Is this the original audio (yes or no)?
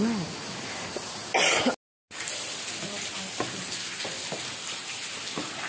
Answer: yes